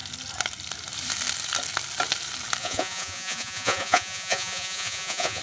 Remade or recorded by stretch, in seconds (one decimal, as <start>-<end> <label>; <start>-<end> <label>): 0.0-2.6 recorded; 2.6-5.4 remade

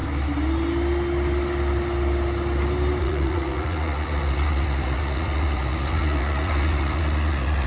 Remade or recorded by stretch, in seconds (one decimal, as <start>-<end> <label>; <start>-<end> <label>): 0.0-3.0 recorded; 3.0-7.7 remade

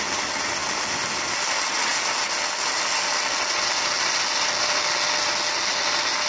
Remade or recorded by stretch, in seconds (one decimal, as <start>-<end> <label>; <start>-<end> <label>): 0.0-6.3 recorded

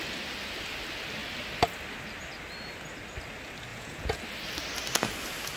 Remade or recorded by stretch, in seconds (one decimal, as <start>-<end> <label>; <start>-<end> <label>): 0.0-3.7 recorded; 3.7-4.2 remade; 4.2-5.6 recorded

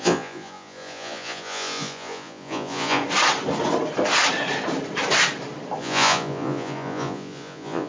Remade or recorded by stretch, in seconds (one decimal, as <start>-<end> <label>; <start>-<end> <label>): 0.0-3.0 remade; 3.0-5.8 recorded; 5.8-7.9 remade